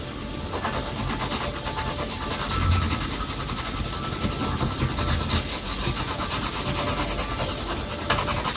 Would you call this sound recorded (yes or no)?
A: yes